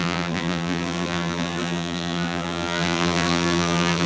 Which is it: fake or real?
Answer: fake